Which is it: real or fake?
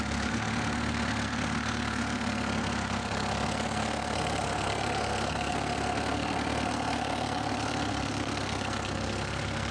fake